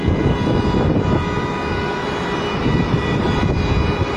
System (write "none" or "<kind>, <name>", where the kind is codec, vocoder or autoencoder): none